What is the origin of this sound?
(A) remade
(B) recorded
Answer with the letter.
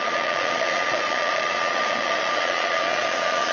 A